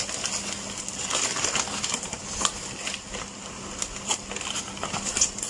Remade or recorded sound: recorded